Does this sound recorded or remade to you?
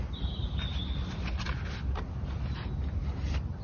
recorded